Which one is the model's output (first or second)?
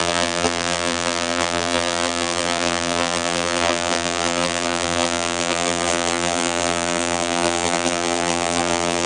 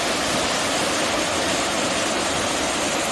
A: first